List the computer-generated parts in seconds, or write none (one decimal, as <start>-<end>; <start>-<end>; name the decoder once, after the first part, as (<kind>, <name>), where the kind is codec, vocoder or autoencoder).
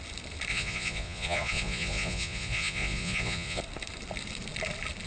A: 0.5-3.6 (vocoder, Vocos)